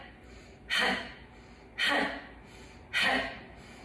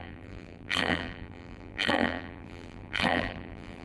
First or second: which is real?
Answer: first